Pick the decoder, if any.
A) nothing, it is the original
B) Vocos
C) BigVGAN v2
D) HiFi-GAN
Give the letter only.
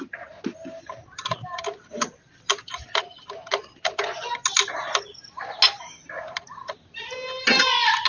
A